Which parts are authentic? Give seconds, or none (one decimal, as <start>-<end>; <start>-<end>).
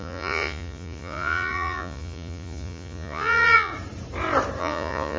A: 3.7-4.6